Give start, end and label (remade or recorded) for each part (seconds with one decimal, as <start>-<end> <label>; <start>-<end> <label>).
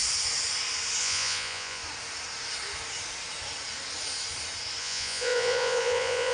0.0-1.0 recorded; 1.0-1.8 remade; 1.8-4.8 recorded; 4.8-6.3 remade